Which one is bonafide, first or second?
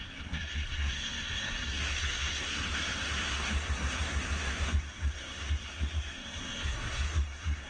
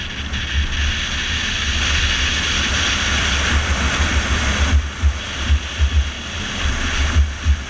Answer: second